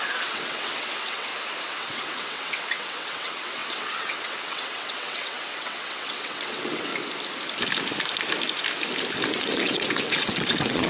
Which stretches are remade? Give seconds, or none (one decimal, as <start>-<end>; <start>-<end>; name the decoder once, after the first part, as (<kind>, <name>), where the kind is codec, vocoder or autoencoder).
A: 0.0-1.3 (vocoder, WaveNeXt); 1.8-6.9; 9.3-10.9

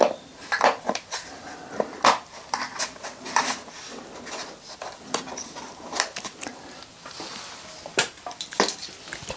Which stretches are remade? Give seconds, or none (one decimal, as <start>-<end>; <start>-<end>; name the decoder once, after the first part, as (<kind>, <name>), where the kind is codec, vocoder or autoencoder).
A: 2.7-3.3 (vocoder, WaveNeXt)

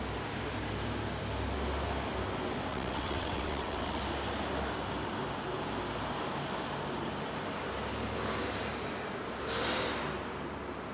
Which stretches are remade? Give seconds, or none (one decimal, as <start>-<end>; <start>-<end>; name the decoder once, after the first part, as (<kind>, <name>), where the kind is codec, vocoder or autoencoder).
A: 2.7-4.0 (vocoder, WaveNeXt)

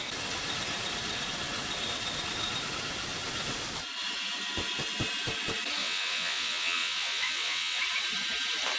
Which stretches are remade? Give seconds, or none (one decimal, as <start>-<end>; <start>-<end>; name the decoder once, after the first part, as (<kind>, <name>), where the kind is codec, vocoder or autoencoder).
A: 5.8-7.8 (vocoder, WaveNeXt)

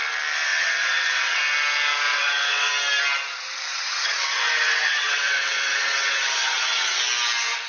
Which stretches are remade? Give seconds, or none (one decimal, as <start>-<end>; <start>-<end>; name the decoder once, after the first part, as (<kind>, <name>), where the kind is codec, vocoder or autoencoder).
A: 0.5-1.4 (vocoder, WaveNeXt); 2.1-2.7; 3.7-7.0

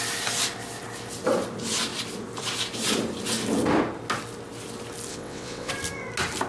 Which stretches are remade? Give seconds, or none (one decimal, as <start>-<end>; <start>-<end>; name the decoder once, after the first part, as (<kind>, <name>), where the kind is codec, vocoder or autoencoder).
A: 5.1-5.7 (vocoder, WaveNeXt)

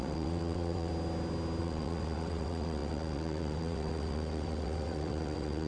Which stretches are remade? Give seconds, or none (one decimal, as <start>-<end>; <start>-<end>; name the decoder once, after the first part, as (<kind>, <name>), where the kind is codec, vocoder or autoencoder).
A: 0.0-0.9 (vocoder, WaveNeXt); 1.6-5.7

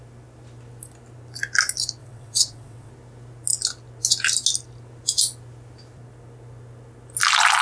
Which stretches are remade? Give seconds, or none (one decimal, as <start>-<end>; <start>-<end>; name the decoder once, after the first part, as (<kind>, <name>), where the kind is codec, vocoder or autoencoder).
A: 2.0-2.9 (vocoder, WaveNeXt)